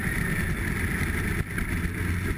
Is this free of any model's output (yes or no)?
yes